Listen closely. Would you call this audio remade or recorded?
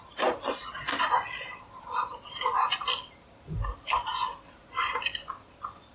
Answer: remade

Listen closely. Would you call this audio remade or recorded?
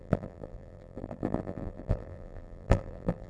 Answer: remade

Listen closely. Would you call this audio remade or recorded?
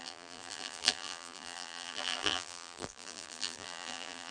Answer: remade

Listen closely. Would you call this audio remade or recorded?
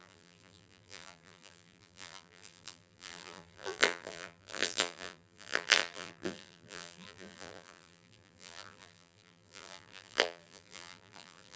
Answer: remade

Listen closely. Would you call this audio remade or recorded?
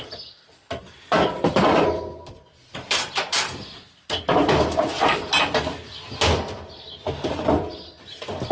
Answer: recorded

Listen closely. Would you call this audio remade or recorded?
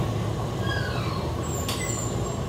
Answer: recorded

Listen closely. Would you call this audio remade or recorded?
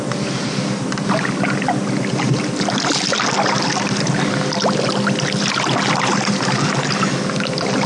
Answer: recorded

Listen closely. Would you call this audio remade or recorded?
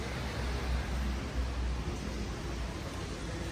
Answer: recorded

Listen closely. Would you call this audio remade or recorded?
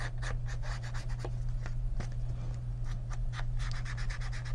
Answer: recorded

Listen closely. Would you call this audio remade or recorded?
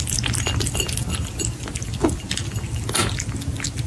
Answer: recorded